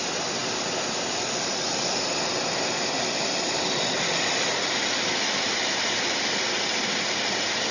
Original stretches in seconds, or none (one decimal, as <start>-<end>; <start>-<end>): 0.0-7.7

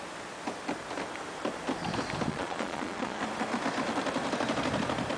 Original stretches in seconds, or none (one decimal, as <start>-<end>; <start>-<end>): 0.0-2.3; 3.2-5.2

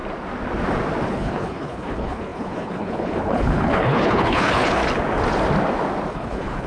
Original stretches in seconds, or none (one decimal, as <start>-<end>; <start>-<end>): 0.0-1.1; 4.8-6.1

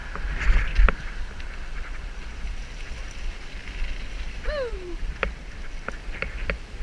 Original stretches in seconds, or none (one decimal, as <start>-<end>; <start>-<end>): 2.6-4.7; 5.9-6.8

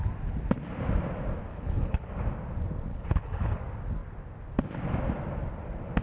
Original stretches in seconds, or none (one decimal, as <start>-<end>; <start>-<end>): 0.0-1.5; 2.1-2.9; 3.6-6.0

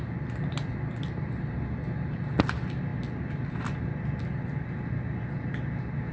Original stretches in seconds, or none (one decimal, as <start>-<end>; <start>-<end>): 0.0-6.1